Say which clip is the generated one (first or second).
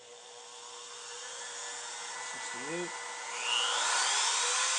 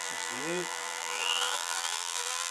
second